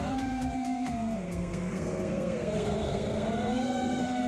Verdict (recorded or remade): remade